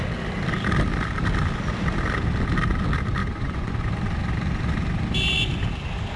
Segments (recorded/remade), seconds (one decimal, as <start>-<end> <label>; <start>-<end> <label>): 0.0-3.2 recorded; 3.2-3.7 remade; 3.7-6.2 recorded